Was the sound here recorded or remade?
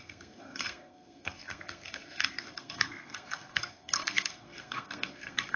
remade